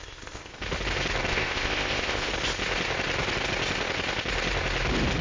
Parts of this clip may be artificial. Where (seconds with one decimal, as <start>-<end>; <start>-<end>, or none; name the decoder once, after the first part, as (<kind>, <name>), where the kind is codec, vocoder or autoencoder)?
0.0-0.5 (codec, ZipCodec); 1.3-2.3